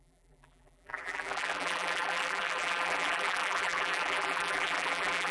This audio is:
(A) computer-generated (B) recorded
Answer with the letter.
A